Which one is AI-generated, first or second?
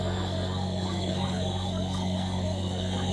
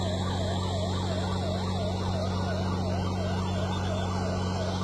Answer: first